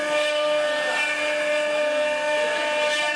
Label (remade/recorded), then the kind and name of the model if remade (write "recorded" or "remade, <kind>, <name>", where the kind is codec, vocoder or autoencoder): recorded